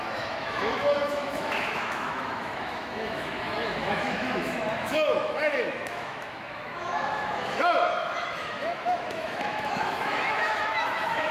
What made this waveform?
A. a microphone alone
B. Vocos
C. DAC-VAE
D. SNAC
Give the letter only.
C